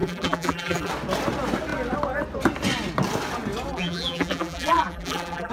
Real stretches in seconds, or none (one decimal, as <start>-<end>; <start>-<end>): 0.9-3.7